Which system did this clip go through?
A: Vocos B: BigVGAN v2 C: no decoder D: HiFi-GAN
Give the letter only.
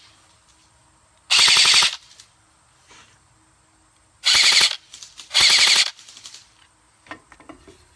C